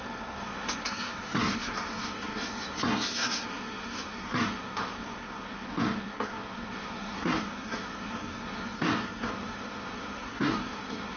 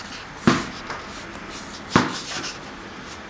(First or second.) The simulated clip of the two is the first